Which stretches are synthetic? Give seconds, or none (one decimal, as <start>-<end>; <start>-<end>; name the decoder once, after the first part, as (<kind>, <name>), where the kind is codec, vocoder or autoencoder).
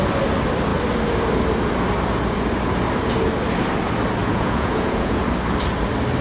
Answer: 4.2-5.3 (vocoder, Vocos)